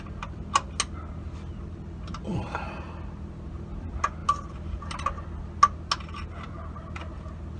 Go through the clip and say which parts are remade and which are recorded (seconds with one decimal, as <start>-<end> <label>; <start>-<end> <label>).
0.0-7.6 recorded